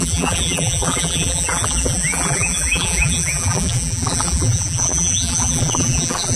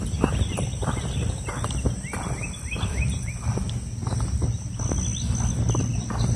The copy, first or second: first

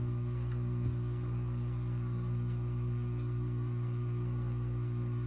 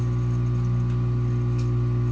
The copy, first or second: first